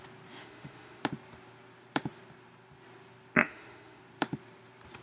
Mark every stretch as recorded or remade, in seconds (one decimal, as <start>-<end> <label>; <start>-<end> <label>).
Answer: 0.0-0.4 recorded; 0.4-1.0 remade; 1.0-3.4 recorded; 3.4-4.0 remade; 4.0-5.0 recorded